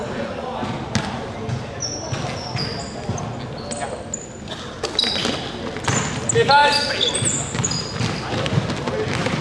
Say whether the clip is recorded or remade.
recorded